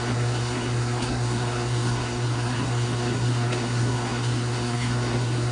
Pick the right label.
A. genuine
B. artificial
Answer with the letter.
B